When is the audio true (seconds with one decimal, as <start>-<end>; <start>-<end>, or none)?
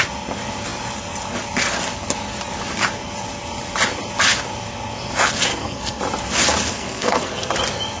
0.0-5.5; 6.0-6.7; 7.5-8.0